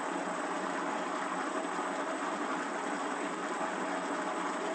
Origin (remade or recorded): recorded